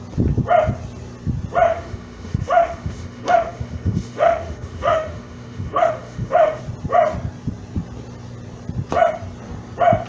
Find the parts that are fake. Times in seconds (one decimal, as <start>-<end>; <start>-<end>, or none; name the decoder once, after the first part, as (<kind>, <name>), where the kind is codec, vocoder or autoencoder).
1.7-6.6 (autoencoder, DAC-VAE)